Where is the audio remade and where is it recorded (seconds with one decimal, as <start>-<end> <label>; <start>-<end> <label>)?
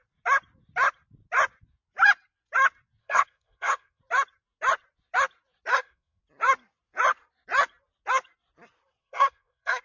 0.0-3.0 recorded; 3.0-4.0 remade; 4.0-5.7 recorded; 5.7-6.2 remade; 6.2-9.0 recorded; 9.0-9.8 remade